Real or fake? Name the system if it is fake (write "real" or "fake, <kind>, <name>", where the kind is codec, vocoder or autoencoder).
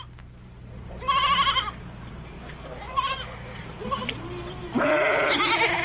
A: real